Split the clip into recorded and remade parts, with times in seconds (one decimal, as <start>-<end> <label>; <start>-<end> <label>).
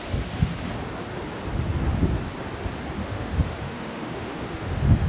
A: 0.0-3.0 recorded; 3.0-5.1 remade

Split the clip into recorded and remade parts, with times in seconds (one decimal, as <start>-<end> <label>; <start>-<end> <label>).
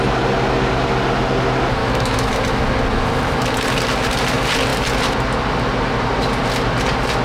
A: 0.0-1.8 recorded; 1.8-2.3 remade; 2.3-7.2 recorded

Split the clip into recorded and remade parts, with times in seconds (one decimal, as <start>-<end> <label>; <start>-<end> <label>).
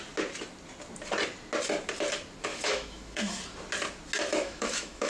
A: 0.0-2.5 recorded; 2.5-3.4 remade; 3.4-4.3 recorded; 4.3-5.1 remade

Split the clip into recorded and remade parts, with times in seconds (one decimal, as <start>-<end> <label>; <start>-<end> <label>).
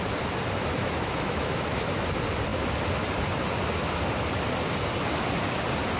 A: 0.0-0.8 recorded; 0.8-1.7 remade; 1.7-6.0 recorded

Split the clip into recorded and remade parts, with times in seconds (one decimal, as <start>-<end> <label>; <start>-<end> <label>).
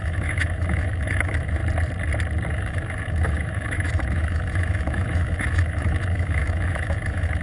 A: 0.0-1.6 remade; 1.6-2.5 recorded; 2.5-7.4 remade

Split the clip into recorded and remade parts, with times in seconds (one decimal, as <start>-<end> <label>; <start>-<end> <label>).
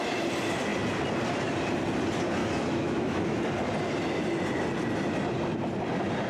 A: 0.0-2.4 recorded; 2.4-3.4 remade; 3.4-6.3 recorded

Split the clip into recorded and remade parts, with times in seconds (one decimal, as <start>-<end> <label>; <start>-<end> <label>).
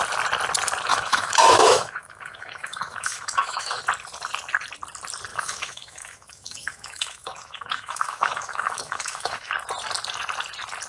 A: 0.0-0.9 recorded; 0.9-3.8 remade; 3.8-5.3 recorded; 5.3-9.5 remade; 9.5-10.9 recorded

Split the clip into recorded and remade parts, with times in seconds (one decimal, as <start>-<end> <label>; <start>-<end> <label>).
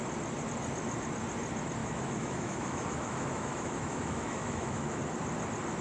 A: 0.0-1.8 recorded; 1.8-5.0 remade; 5.0-5.8 recorded